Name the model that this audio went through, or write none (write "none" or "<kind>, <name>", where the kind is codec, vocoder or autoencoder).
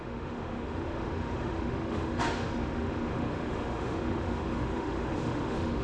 autoencoder, DAC-VAE